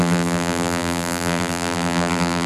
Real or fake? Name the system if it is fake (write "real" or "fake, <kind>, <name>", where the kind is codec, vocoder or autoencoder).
fake, vocoder, BigVGAN v2